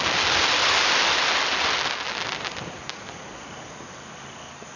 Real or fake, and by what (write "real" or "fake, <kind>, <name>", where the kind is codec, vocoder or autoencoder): real